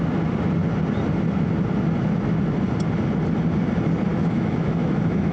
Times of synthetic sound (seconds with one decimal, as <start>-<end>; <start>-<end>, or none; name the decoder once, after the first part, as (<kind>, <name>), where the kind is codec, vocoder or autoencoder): 4.1-5.3 (autoencoder, DAC-VAE)